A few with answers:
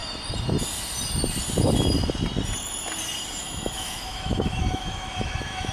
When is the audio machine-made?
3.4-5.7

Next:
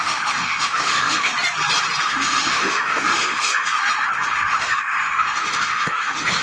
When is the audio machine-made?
0.0-1.3; 2.0-6.4

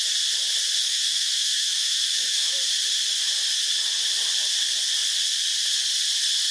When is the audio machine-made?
0.8-2.5

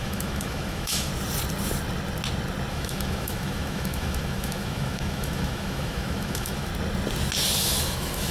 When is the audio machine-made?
0.0-1.1; 2.7-6.7; 7.6-8.3

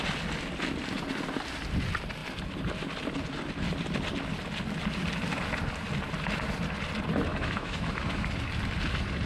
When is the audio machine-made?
7.3-8.3

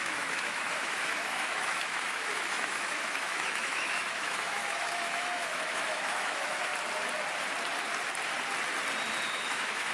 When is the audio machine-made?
0.0-6.7; 9.3-9.9